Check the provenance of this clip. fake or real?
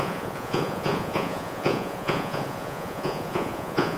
fake